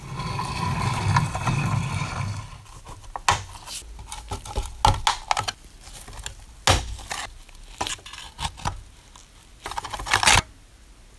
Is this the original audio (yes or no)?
yes